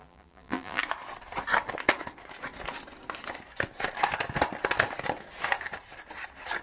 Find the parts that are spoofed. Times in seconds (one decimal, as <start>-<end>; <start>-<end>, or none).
0.0-0.8